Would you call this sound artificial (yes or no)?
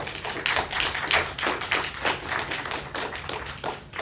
no